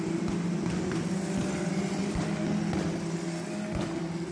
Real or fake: real